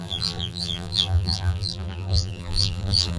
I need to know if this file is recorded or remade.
remade